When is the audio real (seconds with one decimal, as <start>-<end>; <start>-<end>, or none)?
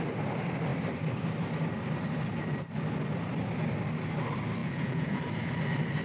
0.0-4.6; 5.2-6.0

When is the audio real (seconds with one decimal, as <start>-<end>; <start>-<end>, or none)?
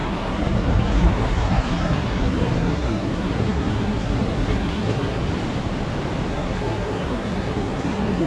5.2-6.3